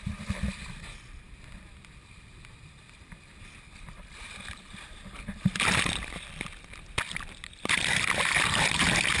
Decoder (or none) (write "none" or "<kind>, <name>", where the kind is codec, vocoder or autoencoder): vocoder, BigVGAN v2